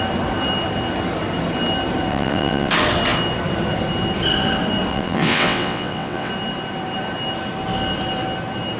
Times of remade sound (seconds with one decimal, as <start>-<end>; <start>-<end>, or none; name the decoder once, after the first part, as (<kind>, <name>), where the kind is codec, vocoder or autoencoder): 2.1-2.7 (vocoder, WaveNeXt); 4.9-6.3